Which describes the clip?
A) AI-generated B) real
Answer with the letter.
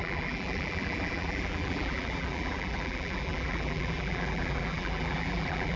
A